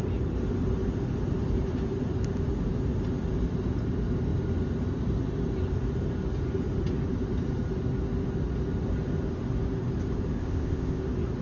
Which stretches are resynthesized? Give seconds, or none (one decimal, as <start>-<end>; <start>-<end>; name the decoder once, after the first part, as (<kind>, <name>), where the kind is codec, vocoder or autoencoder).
10.4-11.0 (codec, ZipCodec)